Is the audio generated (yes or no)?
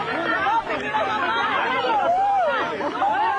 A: yes